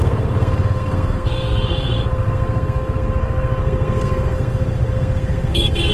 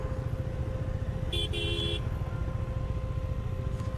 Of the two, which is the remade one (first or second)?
first